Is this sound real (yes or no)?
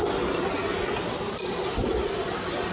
yes